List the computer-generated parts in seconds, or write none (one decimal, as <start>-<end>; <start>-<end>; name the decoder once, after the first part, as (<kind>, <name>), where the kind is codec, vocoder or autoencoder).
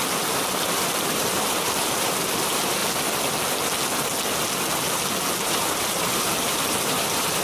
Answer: 0.0-2.8 (vocoder, BigVGAN v2); 5.4-7.4